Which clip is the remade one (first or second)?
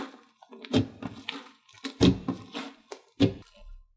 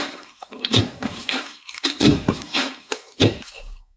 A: second